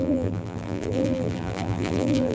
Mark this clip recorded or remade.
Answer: remade